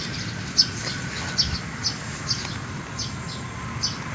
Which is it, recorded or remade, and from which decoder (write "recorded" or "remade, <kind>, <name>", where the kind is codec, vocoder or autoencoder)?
recorded